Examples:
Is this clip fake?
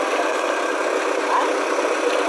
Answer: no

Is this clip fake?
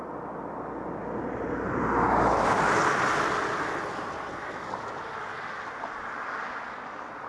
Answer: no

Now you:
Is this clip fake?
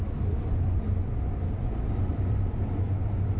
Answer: no